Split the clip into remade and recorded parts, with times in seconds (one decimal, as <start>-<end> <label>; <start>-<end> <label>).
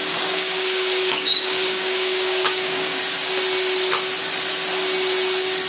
0.0-3.0 remade; 3.0-5.7 recorded